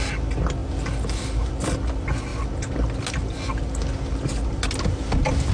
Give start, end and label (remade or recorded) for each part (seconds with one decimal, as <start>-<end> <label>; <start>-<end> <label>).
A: 0.0-5.5 recorded